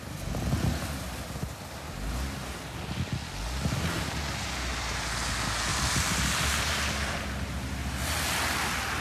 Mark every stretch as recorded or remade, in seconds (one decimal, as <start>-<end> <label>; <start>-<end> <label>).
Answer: 0.0-5.7 recorded; 5.7-7.2 remade; 7.2-9.0 recorded